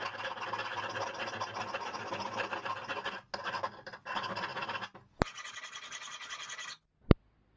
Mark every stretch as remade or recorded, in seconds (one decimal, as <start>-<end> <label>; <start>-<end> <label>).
0.0-7.6 recorded